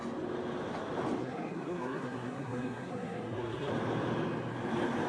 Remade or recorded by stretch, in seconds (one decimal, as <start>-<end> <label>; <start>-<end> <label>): 0.0-1.2 recorded; 1.2-3.7 remade; 3.7-5.1 recorded

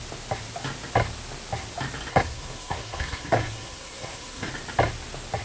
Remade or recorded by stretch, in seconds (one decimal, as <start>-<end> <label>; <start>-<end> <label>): 0.0-2.1 recorded; 2.1-4.5 remade; 4.5-5.4 recorded

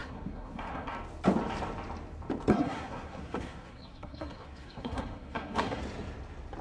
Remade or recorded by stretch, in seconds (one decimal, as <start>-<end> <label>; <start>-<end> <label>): 0.0-0.9 remade; 0.9-2.5 recorded; 2.5-5.8 remade; 5.8-6.6 recorded

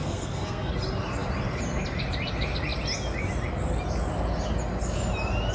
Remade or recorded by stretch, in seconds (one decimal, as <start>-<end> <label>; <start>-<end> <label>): 0.0-0.7 remade; 0.7-5.5 recorded

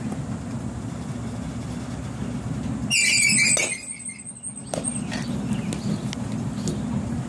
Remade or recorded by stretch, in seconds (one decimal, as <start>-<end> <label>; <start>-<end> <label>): 0.0-7.3 recorded

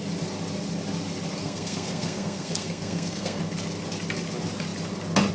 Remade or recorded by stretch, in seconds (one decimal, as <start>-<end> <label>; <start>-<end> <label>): 0.0-1.4 recorded; 1.4-3.4 remade; 3.4-5.3 recorded

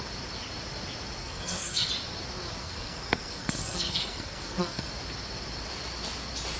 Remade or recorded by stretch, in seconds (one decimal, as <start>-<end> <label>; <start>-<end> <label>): 0.0-1.2 recorded; 1.2-1.9 remade; 1.9-2.6 recorded; 2.6-4.9 remade; 4.9-6.6 recorded

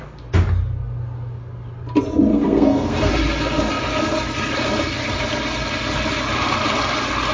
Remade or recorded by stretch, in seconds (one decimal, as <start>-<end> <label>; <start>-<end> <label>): 0.0-2.3 recorded; 2.3-3.1 remade; 3.1-7.3 recorded